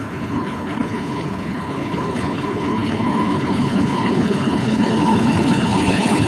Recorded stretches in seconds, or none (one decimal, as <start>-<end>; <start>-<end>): none